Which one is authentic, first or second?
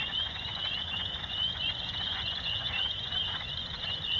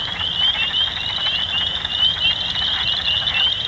second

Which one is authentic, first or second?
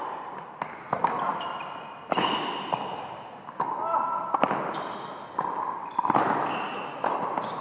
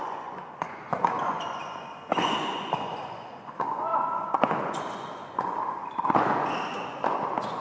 first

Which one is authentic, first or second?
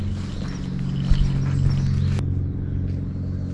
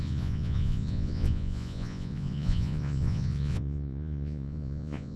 first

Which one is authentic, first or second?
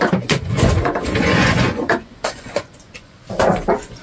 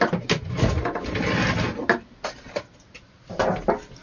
second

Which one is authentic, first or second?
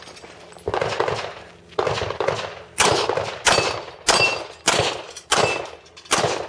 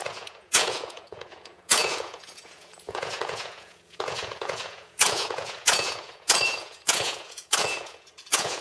first